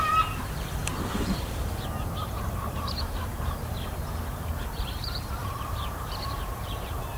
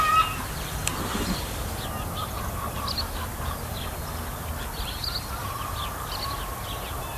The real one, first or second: second